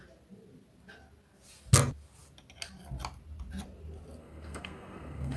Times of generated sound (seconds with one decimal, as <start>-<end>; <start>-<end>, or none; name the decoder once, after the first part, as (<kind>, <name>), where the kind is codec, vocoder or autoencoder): 4.2-5.4 (codec, SNAC)